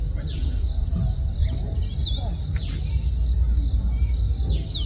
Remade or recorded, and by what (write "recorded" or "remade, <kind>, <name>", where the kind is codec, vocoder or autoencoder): recorded